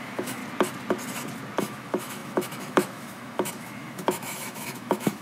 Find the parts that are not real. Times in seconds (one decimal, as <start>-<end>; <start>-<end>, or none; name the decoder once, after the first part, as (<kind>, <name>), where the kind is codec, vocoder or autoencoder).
0.0-0.4 (autoencoder, DAC-VAE); 1.6-5.2